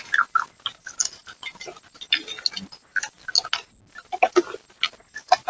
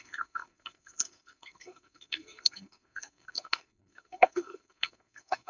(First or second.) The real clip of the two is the first